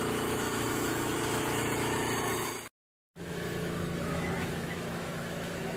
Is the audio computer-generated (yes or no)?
yes